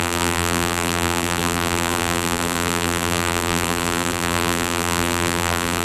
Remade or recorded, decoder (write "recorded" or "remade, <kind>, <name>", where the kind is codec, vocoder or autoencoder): remade, vocoder, BigVGAN v2